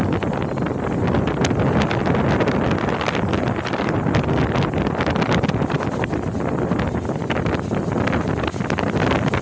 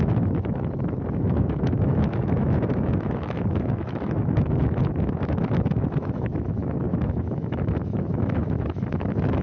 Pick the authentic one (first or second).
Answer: first